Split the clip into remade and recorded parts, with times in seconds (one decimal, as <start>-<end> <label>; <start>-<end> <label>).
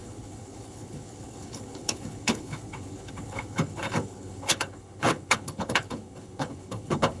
0.0-7.2 remade